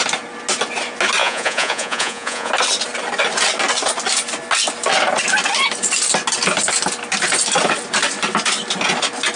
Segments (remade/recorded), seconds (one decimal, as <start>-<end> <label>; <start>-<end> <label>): 0.0-1.2 recorded; 1.2-2.5 remade; 2.5-9.4 recorded